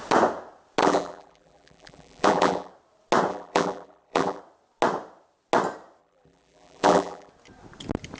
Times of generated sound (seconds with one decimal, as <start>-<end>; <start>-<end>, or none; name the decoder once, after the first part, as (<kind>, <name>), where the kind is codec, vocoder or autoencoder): 0.8-2.7 (vocoder, BigVGAN v2); 3.3-4.4; 6.0-7.3